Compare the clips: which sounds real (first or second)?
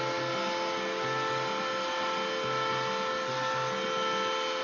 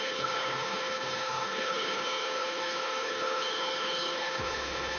first